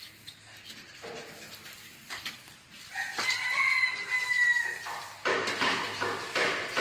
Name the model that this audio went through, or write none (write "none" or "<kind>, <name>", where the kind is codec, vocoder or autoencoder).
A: none